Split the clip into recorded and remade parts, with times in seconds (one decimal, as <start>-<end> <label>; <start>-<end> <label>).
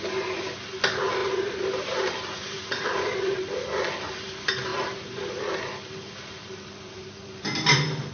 0.0-1.2 recorded; 1.2-4.1 remade; 4.1-4.7 recorded; 4.7-5.3 remade; 5.3-8.1 recorded